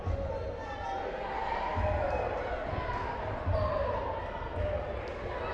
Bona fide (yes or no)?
yes